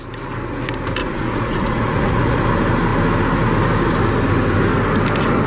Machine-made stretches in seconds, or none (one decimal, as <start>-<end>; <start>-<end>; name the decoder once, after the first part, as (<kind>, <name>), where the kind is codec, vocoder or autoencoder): 1.0-2.4 (vocoder, Vocos)